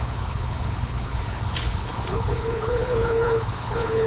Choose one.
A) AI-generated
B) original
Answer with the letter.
A